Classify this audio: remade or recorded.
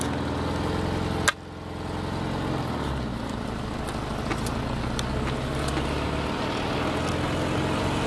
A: recorded